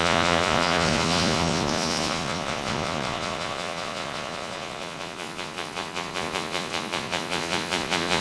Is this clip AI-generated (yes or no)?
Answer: yes